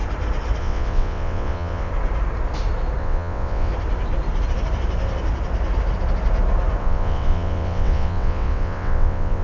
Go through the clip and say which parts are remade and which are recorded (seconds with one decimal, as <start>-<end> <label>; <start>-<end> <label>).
0.0-0.6 recorded; 0.6-1.9 remade; 1.9-3.0 recorded; 3.0-3.7 remade; 3.7-6.8 recorded; 6.8-9.4 remade